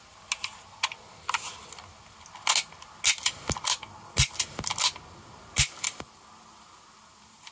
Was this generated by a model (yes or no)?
no